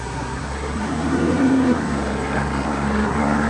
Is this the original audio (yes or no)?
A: no